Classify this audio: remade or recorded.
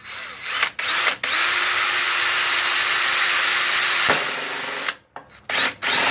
recorded